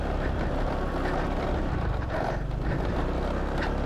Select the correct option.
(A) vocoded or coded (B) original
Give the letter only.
B